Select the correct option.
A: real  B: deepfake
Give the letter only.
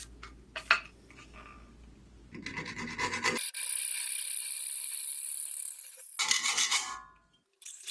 A